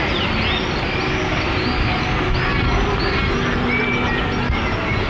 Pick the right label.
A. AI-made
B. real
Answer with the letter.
B